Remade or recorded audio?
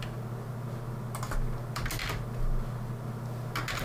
recorded